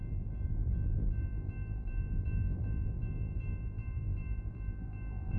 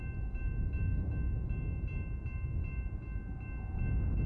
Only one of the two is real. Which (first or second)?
second